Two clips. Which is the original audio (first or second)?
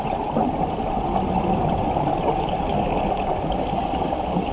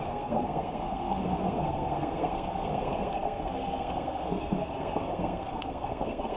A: first